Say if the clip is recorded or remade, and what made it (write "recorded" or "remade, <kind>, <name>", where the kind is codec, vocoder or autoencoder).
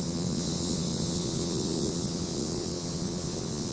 remade, vocoder, Vocos